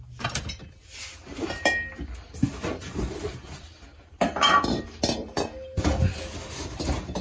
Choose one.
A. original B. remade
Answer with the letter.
A